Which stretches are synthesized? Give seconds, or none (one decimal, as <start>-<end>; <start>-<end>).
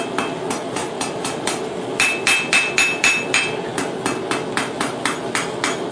0.8-1.8